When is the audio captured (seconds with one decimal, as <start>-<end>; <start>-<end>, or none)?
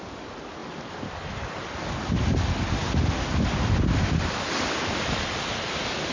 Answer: 0.0-6.1